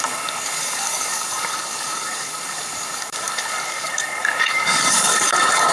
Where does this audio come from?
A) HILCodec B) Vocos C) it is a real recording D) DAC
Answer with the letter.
D